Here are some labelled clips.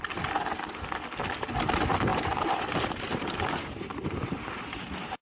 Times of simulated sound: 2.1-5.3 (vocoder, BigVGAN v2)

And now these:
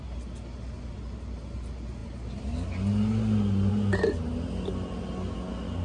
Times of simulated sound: none

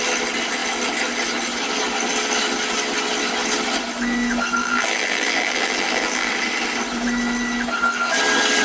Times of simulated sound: 4.6-6.3 (vocoder, BigVGAN v2)

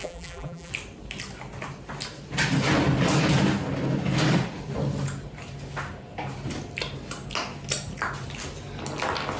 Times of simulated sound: 0.0-0.7 (vocoder, BigVGAN v2)

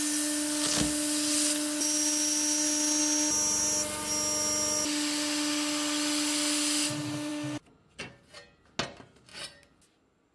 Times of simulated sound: none